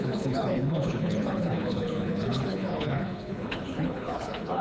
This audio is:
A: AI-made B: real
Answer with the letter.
A